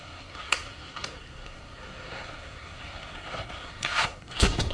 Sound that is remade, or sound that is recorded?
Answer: remade